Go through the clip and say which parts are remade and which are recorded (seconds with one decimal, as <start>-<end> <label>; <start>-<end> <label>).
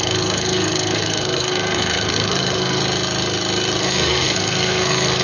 0.0-2.8 remade; 2.8-3.8 recorded; 3.8-5.2 remade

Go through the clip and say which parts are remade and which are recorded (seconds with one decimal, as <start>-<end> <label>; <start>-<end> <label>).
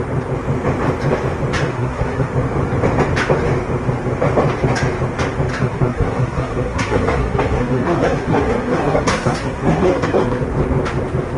0.0-1.7 recorded; 1.7-2.3 remade; 2.3-5.5 recorded; 5.5-10.4 remade; 10.4-11.4 recorded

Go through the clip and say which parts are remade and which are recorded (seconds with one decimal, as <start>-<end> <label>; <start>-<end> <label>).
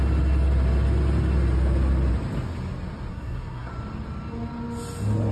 0.0-3.1 recorded; 3.1-3.7 remade; 3.7-5.3 recorded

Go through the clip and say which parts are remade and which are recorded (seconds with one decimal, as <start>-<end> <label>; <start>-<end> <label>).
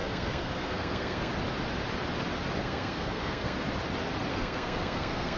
0.0-1.3 remade; 1.3-2.6 recorded; 2.6-3.7 remade; 3.7-4.3 recorded; 4.3-5.4 remade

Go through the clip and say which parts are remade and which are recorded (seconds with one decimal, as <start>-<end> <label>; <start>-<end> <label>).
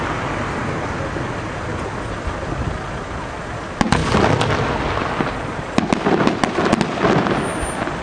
0.0-8.0 recorded